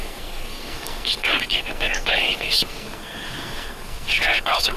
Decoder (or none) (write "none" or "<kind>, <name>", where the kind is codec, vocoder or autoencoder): codec, SNAC